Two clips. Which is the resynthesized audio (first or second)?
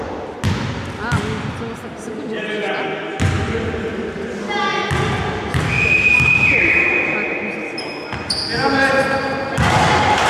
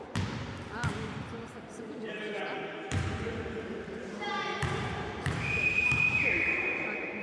second